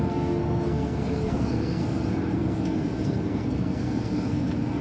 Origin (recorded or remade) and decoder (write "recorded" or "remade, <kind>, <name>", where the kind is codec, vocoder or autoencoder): remade, codec, SNAC